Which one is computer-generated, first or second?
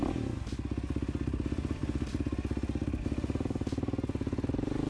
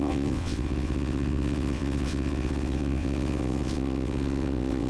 second